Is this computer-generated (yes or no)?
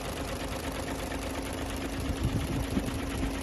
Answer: no